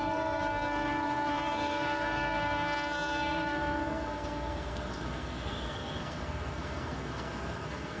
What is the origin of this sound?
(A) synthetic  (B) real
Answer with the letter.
A